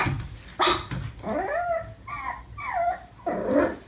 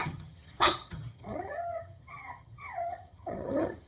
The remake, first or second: second